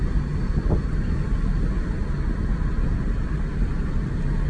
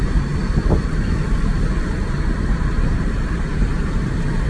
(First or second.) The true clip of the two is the first